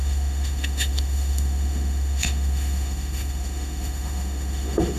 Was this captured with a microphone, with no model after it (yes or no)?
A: no